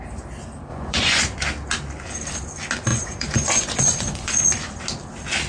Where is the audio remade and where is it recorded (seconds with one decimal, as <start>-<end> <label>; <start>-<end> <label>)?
0.0-0.7 recorded; 0.7-1.2 remade; 1.2-2.9 recorded; 2.9-4.8 remade; 4.8-5.5 recorded